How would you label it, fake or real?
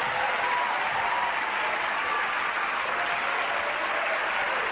real